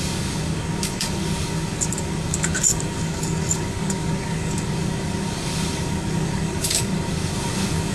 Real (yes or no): no